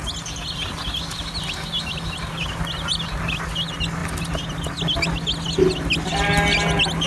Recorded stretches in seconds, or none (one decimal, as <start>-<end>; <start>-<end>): 0.0-7.1

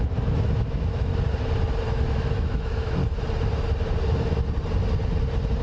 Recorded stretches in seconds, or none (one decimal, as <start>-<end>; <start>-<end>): 1.1-1.8; 3.0-5.6

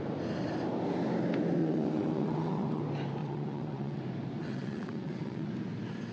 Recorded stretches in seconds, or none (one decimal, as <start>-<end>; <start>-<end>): 0.0-1.6; 2.8-3.2; 4.0-4.4; 5.5-6.1

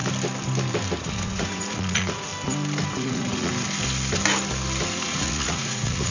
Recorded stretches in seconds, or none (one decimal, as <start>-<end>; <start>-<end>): 0.0-1.0; 2.3-2.9; 3.5-4.9

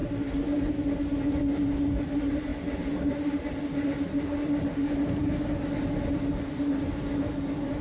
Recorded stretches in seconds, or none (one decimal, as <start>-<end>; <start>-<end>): 0.0-7.8

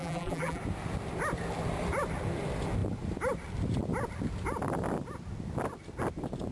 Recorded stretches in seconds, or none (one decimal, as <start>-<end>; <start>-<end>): 0.6-6.5